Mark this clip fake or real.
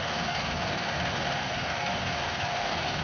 fake